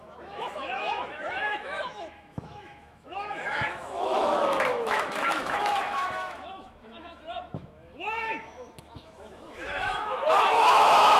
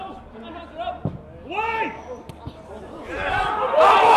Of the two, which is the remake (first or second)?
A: first